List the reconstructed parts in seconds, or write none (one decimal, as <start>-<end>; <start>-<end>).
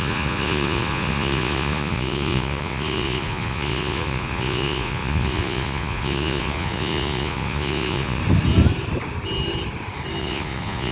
0.0-8.2; 10.2-10.9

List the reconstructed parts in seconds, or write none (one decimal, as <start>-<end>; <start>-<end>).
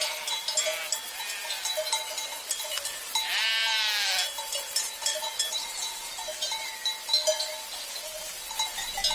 none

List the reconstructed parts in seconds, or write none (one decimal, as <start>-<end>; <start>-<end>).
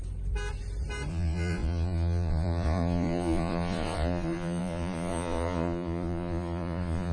1.1-7.1